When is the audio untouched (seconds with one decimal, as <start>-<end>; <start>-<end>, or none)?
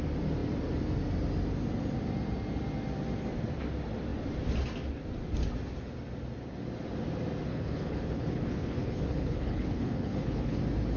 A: 0.0-7.5; 10.6-11.0